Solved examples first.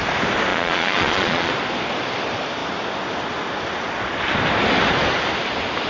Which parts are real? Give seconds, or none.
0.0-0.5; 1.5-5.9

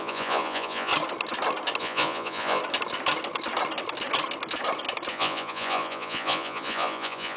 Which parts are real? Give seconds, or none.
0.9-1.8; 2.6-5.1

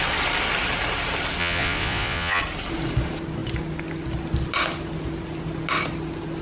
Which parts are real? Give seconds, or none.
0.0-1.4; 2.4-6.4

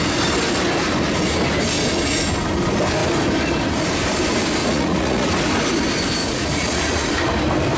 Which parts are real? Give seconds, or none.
0.0-4.6; 5.3-6.2; 7.1-7.8